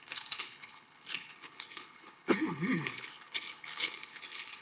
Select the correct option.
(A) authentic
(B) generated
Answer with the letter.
B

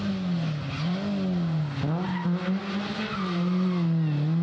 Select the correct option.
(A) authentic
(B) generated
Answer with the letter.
A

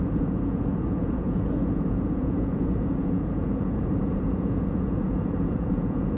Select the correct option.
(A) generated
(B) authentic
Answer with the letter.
A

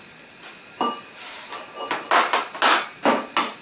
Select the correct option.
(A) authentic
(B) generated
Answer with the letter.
A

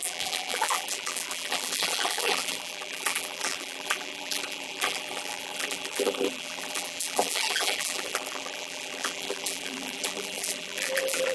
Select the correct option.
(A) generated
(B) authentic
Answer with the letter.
A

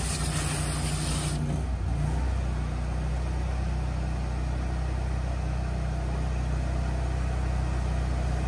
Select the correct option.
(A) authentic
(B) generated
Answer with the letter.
A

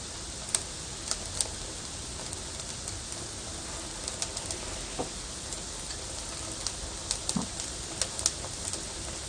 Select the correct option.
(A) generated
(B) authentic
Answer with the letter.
B